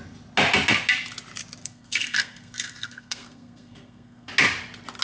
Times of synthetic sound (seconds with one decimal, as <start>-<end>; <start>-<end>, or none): 1.6-4.3